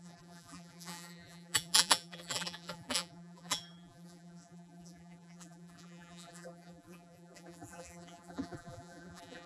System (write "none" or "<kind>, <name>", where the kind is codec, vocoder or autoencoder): vocoder, BigVGAN v2